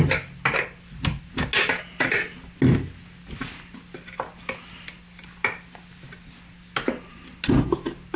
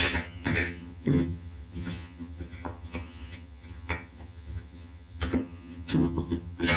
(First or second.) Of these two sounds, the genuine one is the first